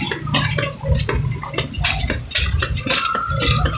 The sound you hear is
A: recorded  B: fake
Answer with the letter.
A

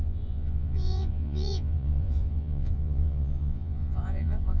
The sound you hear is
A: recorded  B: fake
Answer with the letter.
B